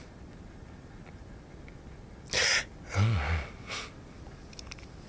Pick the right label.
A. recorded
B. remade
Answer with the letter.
A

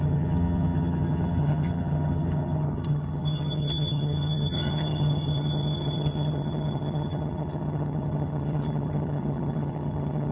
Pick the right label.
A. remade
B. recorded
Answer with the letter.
A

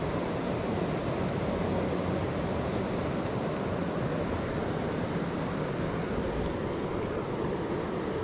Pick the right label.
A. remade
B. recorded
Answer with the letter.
B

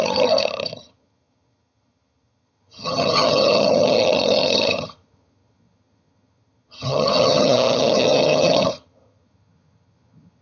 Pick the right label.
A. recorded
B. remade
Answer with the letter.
B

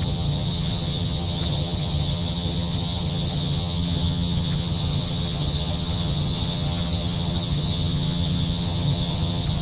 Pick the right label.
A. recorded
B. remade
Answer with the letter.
B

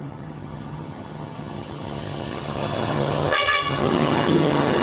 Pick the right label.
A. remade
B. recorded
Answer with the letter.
A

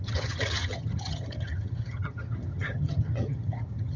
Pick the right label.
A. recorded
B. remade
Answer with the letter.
B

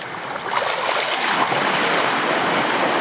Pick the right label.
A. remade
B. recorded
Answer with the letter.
B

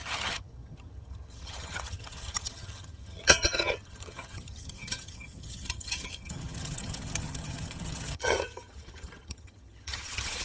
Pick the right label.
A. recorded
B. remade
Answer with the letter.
B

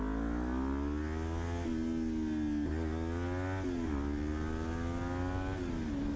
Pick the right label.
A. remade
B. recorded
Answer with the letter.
B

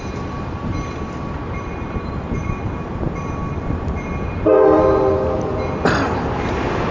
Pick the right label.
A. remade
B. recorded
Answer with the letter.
B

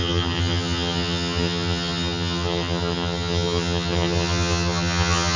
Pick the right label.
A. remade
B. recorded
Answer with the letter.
A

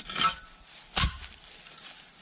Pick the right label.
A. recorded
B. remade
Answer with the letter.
A